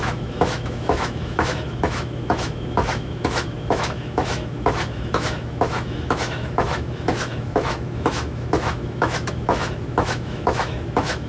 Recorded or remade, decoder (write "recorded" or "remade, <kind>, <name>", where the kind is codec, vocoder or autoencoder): remade, autoencoder, DAC-VAE